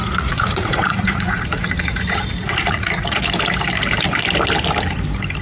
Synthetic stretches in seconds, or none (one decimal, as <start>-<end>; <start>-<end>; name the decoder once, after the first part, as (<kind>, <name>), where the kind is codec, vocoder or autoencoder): 0.0-3.2 (vocoder, Vocos)